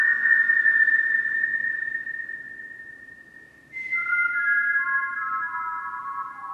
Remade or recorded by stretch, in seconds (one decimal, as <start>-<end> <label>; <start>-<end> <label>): 0.0-6.5 recorded